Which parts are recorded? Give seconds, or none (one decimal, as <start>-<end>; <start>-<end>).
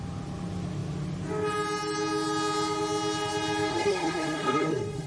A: 0.0-3.7